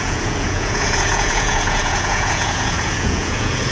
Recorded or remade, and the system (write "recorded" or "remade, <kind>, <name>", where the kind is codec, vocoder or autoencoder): remade, vocoder, Vocos